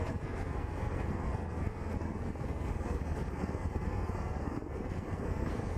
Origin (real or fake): fake